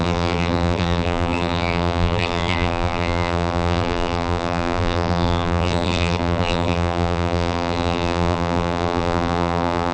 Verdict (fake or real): fake